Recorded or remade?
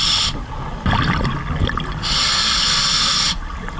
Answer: recorded